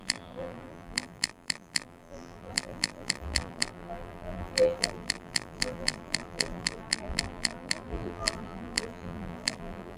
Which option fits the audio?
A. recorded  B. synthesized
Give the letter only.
B